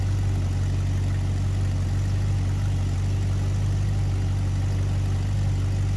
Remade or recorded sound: recorded